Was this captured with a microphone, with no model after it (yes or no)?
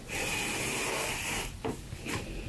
yes